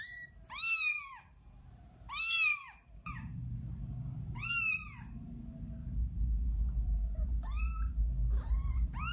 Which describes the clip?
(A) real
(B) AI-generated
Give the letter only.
B